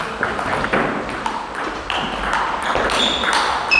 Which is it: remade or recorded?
recorded